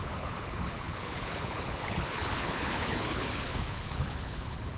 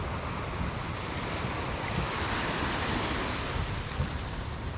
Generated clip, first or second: first